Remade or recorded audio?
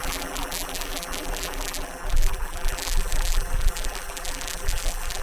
remade